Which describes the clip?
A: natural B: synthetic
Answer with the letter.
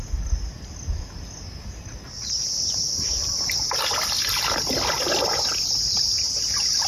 A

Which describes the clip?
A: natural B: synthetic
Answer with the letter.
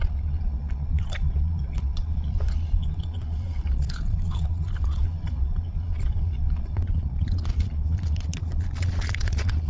B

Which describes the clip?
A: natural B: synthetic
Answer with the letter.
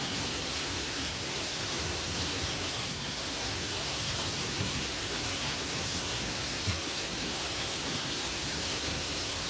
B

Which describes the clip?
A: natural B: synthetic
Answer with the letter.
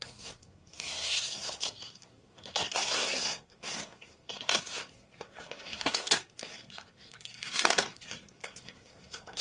B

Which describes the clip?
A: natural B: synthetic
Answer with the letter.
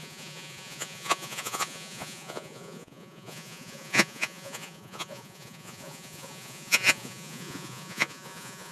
B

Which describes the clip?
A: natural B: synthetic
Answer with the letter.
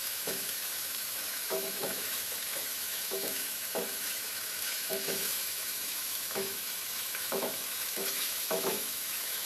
B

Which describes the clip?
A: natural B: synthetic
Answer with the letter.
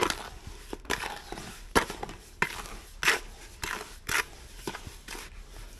A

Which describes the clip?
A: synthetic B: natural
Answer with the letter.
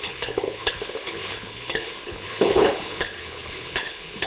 A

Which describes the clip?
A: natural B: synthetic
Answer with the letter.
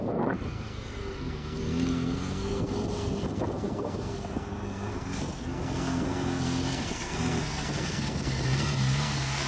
B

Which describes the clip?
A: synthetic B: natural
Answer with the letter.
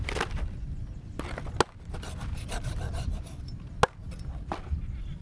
B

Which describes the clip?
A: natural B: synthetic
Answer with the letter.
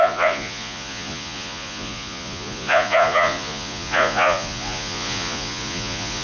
B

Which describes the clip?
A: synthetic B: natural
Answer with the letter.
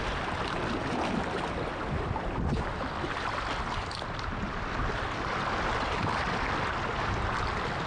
B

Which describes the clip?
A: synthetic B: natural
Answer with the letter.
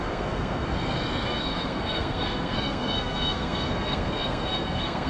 A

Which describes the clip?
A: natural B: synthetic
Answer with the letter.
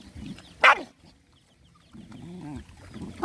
A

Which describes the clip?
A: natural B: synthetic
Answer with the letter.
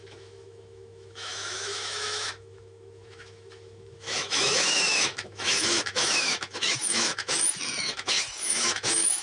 B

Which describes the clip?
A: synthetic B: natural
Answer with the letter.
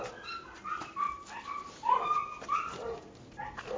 B